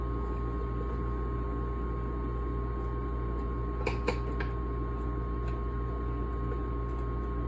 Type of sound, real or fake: real